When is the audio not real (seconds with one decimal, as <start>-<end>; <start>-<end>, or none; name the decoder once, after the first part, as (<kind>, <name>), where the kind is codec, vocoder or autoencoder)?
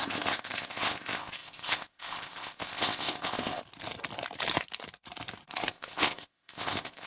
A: 0.0-3.6 (codec, ZipCodec); 5.7-7.1